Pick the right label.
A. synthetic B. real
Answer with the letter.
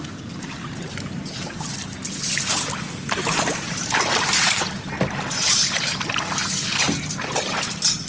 B